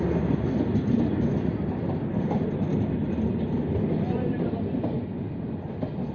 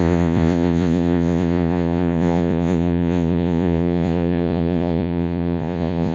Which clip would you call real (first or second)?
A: first